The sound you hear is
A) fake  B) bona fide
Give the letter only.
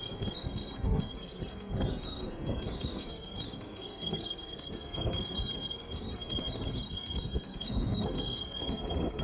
A